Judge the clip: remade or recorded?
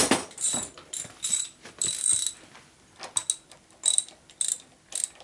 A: recorded